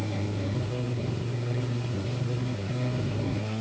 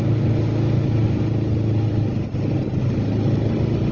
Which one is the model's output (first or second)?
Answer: first